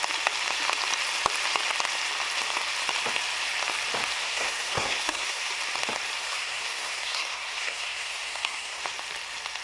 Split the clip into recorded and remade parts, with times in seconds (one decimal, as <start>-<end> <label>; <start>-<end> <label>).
0.0-4.2 recorded; 4.2-5.5 remade; 5.5-6.2 recorded; 6.2-8.8 remade; 8.8-9.6 recorded